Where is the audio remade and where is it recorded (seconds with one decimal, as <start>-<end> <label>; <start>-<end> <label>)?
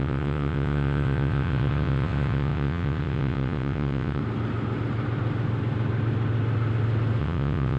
0.0-4.2 remade; 4.2-7.2 recorded; 7.2-7.8 remade